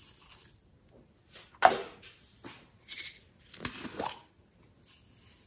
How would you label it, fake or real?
real